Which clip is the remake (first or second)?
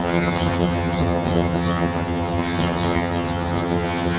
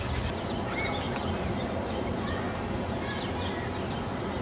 first